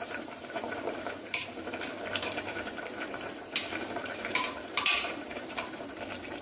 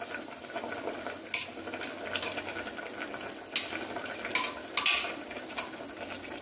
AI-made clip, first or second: first